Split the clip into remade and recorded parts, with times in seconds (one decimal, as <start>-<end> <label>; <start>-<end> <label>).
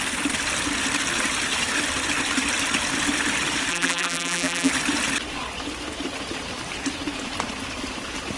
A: 0.0-3.7 recorded; 3.7-4.7 remade; 4.7-8.4 recorded